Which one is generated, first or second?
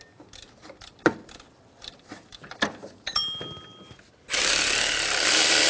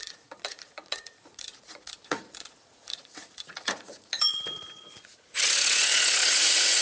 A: second